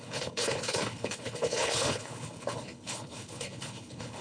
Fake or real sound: fake